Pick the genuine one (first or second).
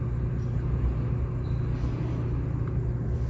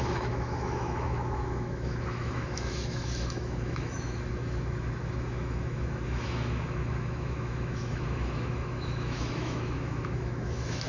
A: first